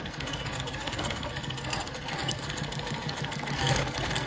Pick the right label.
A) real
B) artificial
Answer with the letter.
B